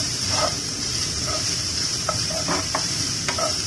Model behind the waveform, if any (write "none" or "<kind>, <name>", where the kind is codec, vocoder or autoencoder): vocoder, BigVGAN v2